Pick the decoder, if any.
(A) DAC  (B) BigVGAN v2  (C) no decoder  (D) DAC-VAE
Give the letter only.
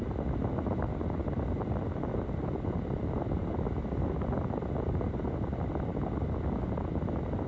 C